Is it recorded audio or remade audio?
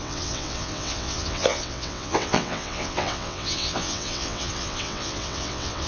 remade